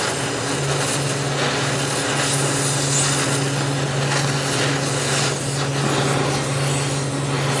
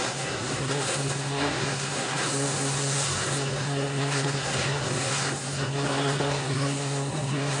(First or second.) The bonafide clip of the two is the first